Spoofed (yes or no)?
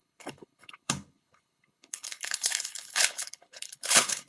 yes